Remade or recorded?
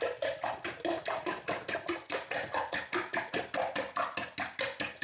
recorded